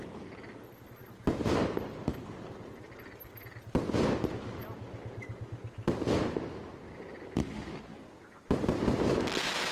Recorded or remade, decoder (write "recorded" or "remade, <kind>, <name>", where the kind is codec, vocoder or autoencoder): recorded